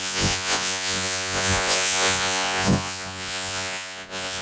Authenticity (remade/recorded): remade